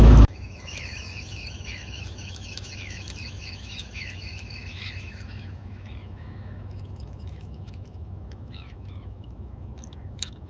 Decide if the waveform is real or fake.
fake